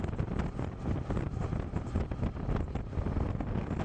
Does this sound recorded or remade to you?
recorded